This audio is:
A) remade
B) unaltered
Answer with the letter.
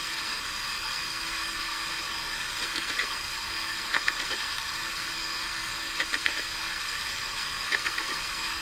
A